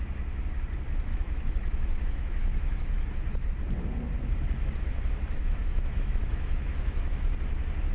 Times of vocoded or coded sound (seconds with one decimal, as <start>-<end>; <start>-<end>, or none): 1.1-3.5; 5.6-7.0